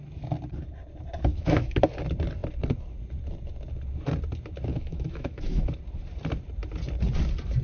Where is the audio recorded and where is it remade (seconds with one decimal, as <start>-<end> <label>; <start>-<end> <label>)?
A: 0.0-1.3 recorded; 1.3-1.8 remade; 1.8-4.7 recorded; 4.7-5.6 remade; 5.6-7.6 recorded

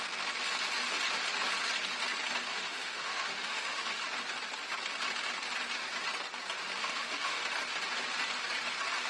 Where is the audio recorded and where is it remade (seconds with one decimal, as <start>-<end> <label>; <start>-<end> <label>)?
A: 0.0-2.5 recorded; 2.5-4.0 remade; 4.0-6.8 recorded; 6.8-7.4 remade; 7.4-9.1 recorded

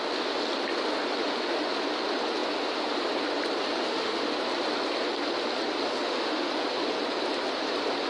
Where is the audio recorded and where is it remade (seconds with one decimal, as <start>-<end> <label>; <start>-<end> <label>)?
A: 0.0-3.8 recorded; 3.8-4.3 remade; 4.3-5.9 recorded; 5.9-6.5 remade; 6.5-8.1 recorded

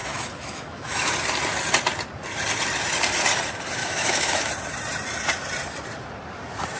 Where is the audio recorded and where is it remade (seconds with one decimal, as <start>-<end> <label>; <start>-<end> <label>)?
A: 0.0-1.1 remade; 1.1-3.8 recorded; 3.8-4.5 remade; 4.5-6.8 recorded

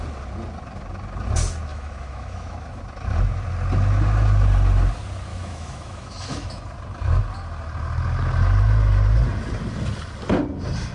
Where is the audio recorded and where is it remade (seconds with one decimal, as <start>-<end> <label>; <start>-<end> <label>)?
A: 0.0-1.7 recorded; 1.7-2.8 remade; 2.8-5.3 recorded; 5.3-6.6 remade; 6.6-10.9 recorded

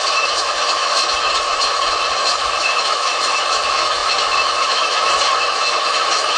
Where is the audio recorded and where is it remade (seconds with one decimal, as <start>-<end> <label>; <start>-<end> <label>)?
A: 0.0-6.4 remade